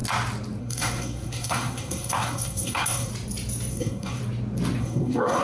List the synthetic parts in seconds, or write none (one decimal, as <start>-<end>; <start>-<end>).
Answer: 0.6-3.1; 3.7-4.2; 4.8-5.4